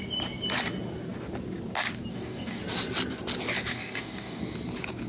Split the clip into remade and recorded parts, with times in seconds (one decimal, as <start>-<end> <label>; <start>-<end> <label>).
0.0-2.1 recorded; 2.1-2.6 remade; 2.6-3.7 recorded; 3.7-4.4 remade; 4.4-5.1 recorded